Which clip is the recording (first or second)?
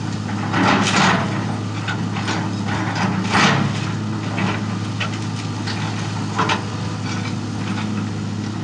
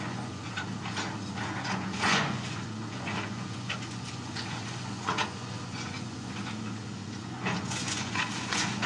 first